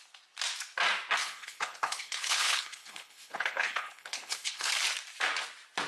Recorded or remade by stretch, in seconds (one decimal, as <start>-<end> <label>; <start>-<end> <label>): 0.0-1.2 recorded; 1.2-4.7 remade; 4.7-5.9 recorded